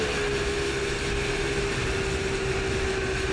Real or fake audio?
real